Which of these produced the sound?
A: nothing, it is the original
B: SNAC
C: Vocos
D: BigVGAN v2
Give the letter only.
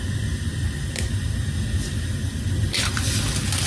A